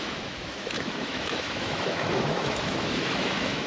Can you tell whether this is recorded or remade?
remade